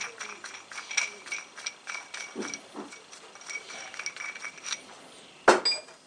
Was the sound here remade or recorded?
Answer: recorded